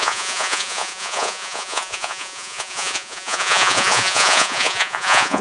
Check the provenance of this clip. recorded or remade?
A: remade